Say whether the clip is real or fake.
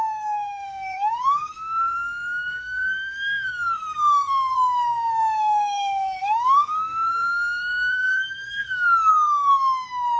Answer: fake